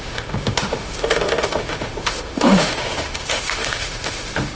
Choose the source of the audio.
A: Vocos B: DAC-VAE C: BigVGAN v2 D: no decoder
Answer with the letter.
B